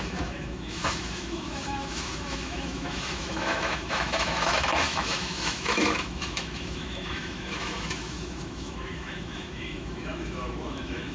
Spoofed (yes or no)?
yes